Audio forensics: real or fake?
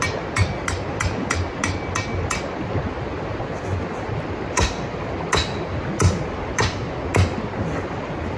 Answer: real